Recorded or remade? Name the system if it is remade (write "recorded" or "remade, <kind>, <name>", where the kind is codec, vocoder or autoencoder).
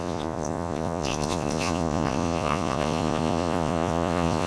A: remade, vocoder, Vocos